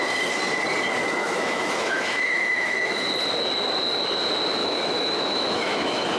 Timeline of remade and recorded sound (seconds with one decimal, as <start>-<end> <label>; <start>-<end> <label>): 0.0-1.2 recorded; 1.2-3.0 remade; 3.0-4.6 recorded; 4.6-6.2 remade